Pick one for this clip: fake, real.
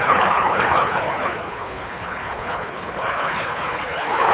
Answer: fake